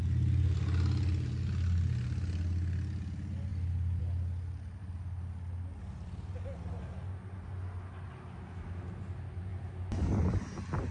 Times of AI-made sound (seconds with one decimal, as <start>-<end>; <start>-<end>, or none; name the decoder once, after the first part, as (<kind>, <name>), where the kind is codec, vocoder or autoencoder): none